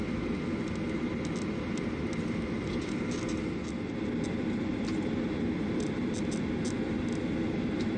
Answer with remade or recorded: recorded